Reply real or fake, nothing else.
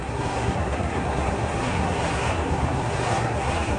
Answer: fake